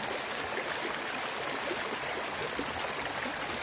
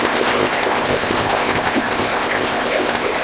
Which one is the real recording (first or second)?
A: first